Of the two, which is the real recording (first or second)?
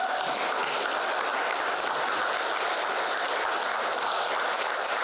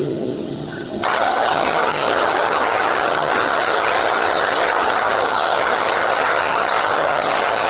first